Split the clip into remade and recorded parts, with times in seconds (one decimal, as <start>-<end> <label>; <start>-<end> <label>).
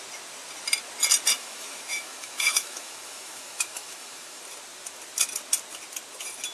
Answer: 0.0-1.3 recorded; 1.3-4.4 remade; 4.4-6.5 recorded